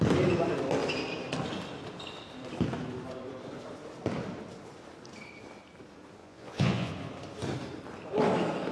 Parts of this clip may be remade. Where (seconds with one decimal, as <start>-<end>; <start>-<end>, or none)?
6.2-6.9